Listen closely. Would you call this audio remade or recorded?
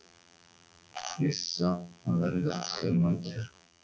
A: remade